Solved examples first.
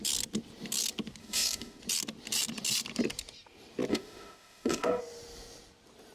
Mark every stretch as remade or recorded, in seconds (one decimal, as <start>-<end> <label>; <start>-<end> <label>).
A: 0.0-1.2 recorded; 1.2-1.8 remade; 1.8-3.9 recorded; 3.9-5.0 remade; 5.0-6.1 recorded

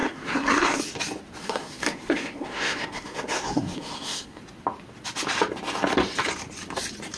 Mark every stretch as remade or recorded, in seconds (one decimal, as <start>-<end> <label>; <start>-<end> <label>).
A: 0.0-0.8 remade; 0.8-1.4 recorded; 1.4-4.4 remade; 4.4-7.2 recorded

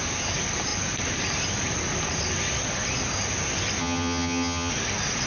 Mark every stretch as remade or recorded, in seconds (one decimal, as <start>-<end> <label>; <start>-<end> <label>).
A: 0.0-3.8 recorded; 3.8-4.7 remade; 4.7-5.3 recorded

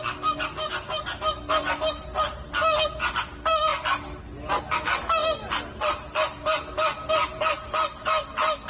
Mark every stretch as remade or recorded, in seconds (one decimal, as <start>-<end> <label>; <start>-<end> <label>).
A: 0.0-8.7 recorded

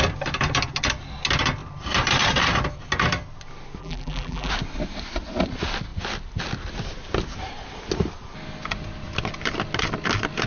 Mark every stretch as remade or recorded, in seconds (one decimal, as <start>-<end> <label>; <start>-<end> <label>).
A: 0.0-3.8 recorded; 3.8-4.5 remade; 4.5-10.5 recorded

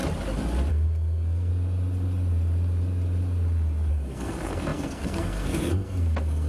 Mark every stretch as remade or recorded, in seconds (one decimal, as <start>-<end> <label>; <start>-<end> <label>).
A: 0.0-0.7 recorded; 0.7-1.5 remade; 1.5-3.9 recorded; 3.9-6.5 remade

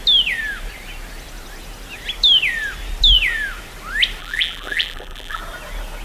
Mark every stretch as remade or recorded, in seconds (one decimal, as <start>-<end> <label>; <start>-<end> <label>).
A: 0.0-4.2 recorded; 4.2-5.4 remade; 5.4-6.0 recorded

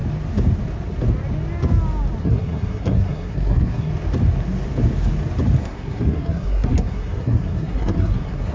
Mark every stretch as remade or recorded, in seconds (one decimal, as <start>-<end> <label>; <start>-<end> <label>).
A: 0.0-2.2 recorded; 2.2-3.9 remade; 3.9-5.6 recorded; 5.6-8.5 remade